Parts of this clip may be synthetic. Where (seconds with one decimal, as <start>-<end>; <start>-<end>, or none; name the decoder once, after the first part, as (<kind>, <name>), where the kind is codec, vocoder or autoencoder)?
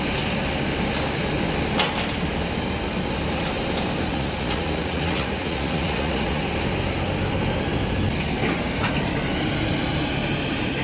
4.1-6.4 (vocoder, Vocos)